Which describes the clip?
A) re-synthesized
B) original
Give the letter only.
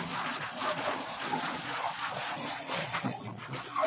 A